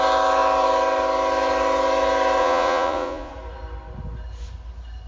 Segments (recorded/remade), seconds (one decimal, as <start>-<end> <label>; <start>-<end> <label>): 0.0-2.4 recorded; 2.4-3.3 remade; 3.3-5.1 recorded